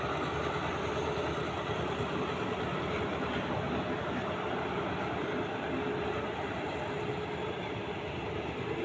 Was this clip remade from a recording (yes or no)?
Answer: no